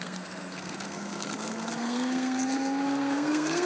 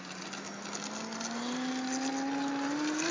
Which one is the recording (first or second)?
second